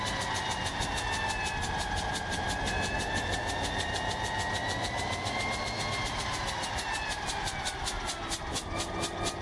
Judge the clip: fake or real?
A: real